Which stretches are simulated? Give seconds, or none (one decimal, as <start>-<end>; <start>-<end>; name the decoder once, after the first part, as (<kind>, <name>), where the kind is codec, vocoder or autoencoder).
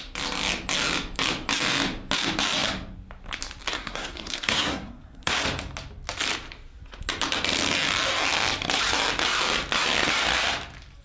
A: 3.7-5.3 (codec, SNAC)